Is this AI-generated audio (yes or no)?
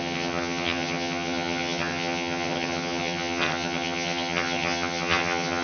yes